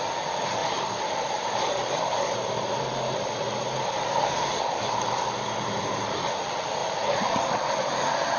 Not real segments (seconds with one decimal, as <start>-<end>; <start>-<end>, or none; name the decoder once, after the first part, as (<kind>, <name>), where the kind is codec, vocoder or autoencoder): 0.6-4.3 (vocoder, BigVGAN v2); 5.2-5.8